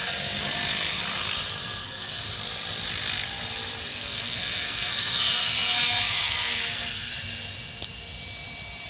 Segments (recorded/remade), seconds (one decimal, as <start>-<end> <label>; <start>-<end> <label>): 0.0-1.6 recorded; 1.6-2.2 remade; 2.2-3.9 recorded; 3.9-7.1 remade; 7.1-8.9 recorded